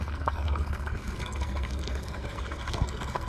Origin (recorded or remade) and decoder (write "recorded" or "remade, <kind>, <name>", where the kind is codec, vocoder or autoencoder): remade, codec, SNAC